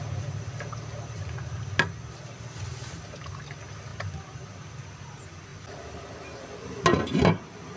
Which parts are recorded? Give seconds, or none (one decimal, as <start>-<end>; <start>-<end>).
0.0-7.8